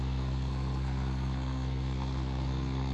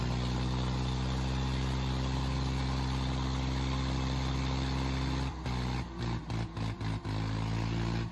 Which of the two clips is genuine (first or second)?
second